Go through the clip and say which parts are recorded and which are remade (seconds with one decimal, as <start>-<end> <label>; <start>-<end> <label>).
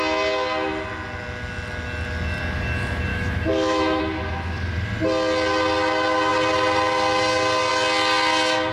0.0-3.1 recorded; 3.1-4.0 remade; 4.0-8.7 recorded